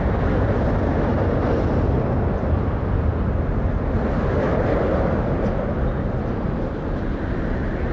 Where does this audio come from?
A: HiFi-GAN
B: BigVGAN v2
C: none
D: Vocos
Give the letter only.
C